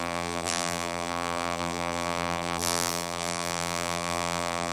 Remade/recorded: remade